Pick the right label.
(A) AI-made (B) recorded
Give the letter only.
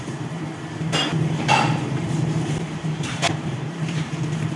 A